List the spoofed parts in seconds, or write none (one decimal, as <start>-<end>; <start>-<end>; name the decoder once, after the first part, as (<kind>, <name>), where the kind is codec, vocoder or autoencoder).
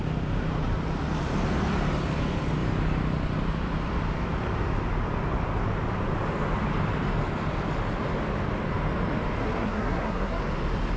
9.4-10.4 (codec, SNAC)